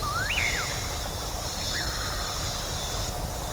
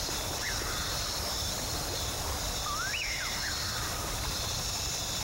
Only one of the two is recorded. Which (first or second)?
first